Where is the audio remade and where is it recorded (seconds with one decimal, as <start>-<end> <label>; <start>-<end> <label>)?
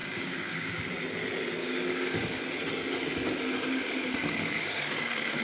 0.0-0.8 remade; 0.8-1.6 recorded; 1.6-2.4 remade; 2.4-3.7 recorded; 3.7-5.4 remade